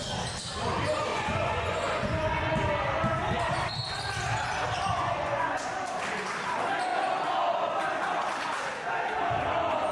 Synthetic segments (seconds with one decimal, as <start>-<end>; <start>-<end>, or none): 1.1-2.5; 4.9-5.7